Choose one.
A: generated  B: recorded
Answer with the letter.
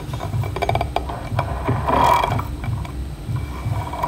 B